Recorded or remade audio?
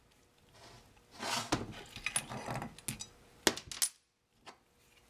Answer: recorded